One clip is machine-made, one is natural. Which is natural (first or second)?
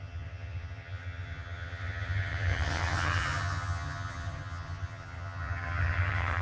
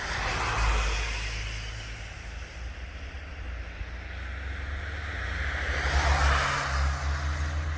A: second